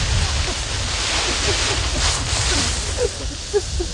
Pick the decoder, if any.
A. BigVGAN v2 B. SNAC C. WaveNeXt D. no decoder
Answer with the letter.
D